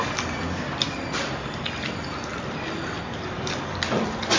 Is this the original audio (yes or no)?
yes